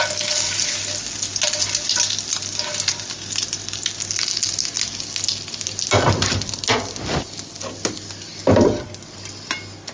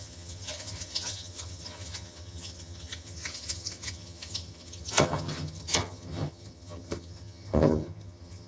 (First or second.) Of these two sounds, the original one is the first